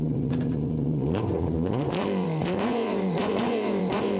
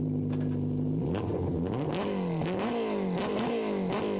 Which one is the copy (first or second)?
first